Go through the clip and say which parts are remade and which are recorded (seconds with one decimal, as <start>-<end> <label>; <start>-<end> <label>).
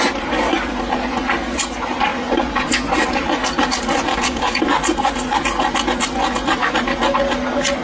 0.0-4.1 recorded; 4.1-4.6 remade; 4.6-7.8 recorded